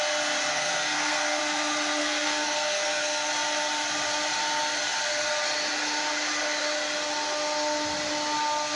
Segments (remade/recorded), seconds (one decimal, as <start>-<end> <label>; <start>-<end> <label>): 0.0-0.5 recorded; 0.5-1.4 remade; 1.4-2.0 recorded; 2.0-3.3 remade; 3.3-8.8 recorded